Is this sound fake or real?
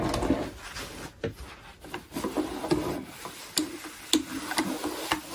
real